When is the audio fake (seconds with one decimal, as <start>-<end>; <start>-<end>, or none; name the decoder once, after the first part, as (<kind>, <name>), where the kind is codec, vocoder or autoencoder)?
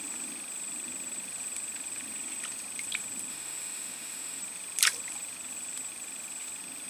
3.3-4.4 (autoencoder, DAC-VAE)